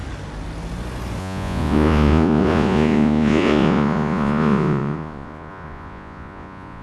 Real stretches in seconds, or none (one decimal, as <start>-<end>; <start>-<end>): 0.0-1.2